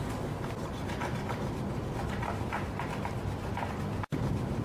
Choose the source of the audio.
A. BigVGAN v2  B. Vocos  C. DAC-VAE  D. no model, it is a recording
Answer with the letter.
D